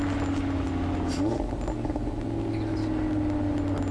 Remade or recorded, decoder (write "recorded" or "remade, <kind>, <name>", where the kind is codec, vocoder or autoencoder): recorded